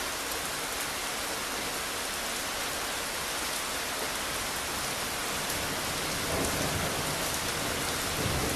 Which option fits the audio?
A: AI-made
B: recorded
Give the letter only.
B